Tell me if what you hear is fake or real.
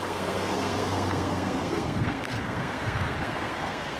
fake